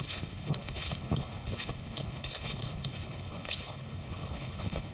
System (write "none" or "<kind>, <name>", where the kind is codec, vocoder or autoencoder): codec, HILCodec